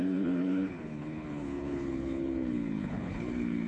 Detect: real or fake fake